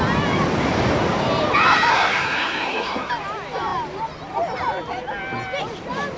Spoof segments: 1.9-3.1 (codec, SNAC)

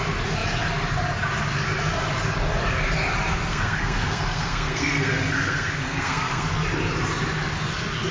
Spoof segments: 3.5-6.5 (codec, SNAC)

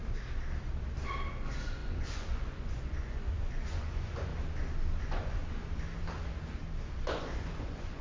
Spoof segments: 1.3-4.3 (vocoder, Vocos); 5.0-5.4; 7.0-8.0

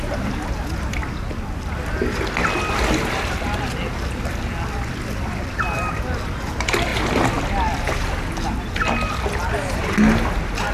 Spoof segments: none

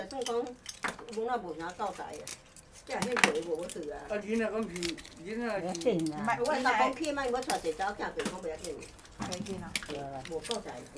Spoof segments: none

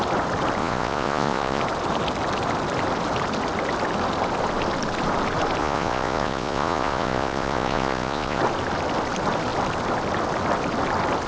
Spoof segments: 0.6-1.6 (vocoder, Vocos); 5.6-8.4

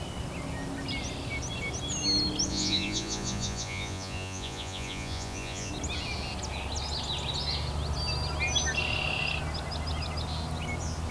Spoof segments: 2.5-5.7 (vocoder, Vocos)